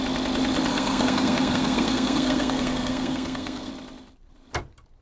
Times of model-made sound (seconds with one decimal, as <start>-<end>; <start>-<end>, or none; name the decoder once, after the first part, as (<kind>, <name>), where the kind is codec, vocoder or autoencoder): 0.7-3.7 (codec, SNAC)